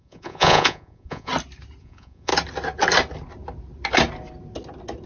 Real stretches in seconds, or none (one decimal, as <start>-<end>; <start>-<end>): 1.3-1.8; 2.3-5.1